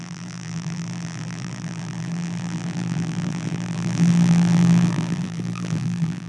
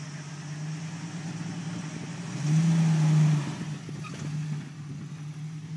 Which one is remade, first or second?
first